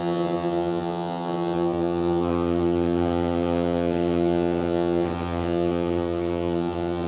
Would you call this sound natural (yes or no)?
no